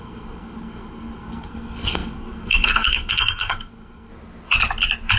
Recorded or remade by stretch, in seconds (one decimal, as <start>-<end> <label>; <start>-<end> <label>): 0.0-4.1 remade; 4.1-5.2 recorded